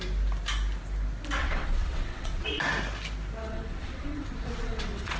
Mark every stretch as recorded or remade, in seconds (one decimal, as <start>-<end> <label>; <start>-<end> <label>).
0.0-1.4 recorded; 1.4-2.6 remade; 2.6-3.4 recorded; 3.4-5.2 remade